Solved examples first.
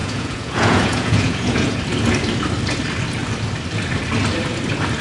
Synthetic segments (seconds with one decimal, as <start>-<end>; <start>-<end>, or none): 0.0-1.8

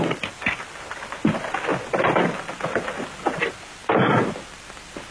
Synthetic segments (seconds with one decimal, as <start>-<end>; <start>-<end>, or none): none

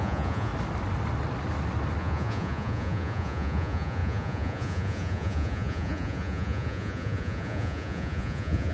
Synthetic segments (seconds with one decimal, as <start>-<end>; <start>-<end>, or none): 0.0-0.5; 2.0-8.7